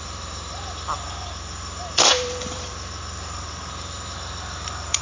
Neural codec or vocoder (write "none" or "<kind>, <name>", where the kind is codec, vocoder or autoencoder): vocoder, BigVGAN v2